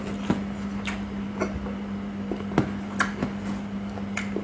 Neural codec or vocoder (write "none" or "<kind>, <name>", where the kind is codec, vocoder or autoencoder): none